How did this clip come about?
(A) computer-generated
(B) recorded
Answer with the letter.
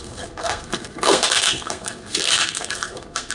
A